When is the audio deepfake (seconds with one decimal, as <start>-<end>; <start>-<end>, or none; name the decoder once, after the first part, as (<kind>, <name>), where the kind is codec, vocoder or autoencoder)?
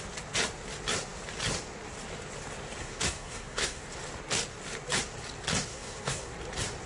2.8-3.8 (codec, SNAC); 5.7-6.3